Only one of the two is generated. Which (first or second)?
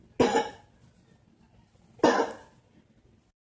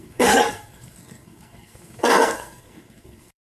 second